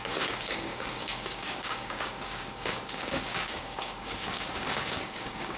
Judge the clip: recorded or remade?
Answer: remade